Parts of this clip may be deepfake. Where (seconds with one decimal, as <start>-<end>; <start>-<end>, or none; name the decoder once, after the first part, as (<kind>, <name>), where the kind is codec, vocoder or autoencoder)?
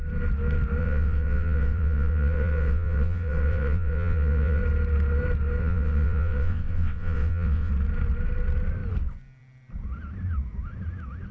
0.8-4.6 (vocoder, WaveNeXt); 5.6-7.7